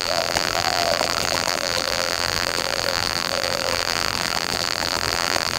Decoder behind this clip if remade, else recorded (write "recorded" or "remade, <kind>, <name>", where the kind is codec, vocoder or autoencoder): remade, vocoder, BigVGAN v2